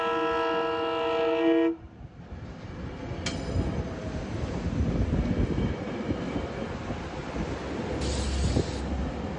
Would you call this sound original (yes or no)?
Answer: yes